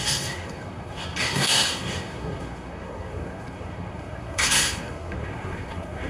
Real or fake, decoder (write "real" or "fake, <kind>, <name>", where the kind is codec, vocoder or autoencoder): fake, codec, SNAC